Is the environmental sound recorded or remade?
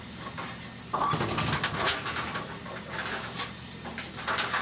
recorded